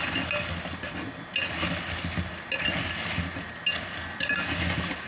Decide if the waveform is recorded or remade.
recorded